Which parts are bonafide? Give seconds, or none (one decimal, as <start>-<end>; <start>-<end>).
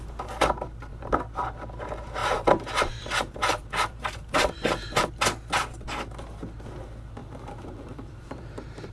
0.0-2.2; 5.1-7.2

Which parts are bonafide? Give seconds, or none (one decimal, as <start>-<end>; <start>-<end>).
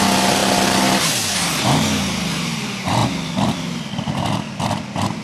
0.0-3.0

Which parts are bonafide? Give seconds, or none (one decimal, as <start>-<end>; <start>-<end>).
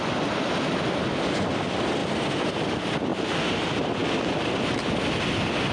3.1-3.6; 4.0-4.5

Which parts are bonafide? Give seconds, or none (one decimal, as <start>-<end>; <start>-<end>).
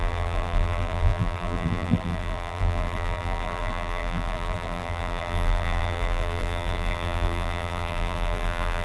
none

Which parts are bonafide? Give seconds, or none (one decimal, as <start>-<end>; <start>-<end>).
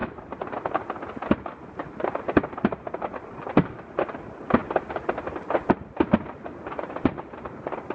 0.0-4.6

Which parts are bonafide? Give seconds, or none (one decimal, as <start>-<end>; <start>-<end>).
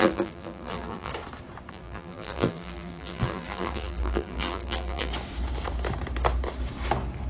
1.1-1.7; 5.1-7.3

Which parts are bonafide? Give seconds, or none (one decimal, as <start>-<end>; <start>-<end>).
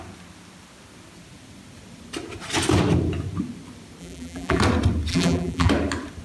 0.0-4.0; 4.6-5.1; 5.7-6.2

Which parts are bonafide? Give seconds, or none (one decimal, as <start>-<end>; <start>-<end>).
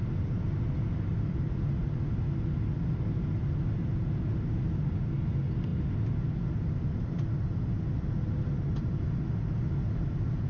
0.0-10.5